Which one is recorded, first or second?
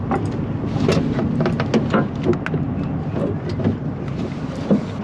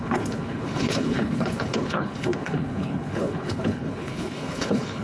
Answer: first